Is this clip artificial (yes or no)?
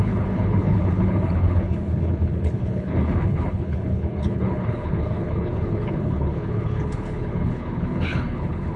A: yes